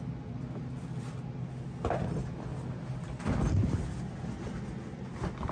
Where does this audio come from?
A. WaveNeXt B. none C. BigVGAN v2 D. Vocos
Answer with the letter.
B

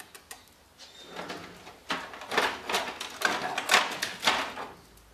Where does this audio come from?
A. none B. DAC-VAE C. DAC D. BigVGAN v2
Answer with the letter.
A